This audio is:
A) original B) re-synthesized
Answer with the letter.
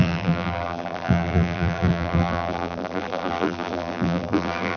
B